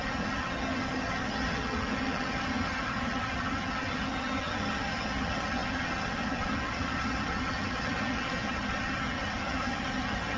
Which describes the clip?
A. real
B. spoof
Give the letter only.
B